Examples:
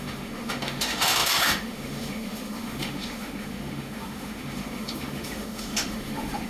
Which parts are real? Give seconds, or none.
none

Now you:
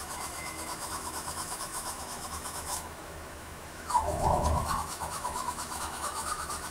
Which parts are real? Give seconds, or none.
none